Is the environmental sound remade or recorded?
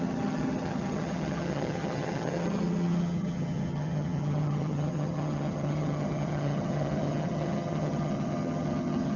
remade